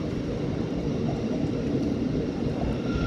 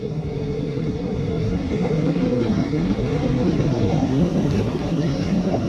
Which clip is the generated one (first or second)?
second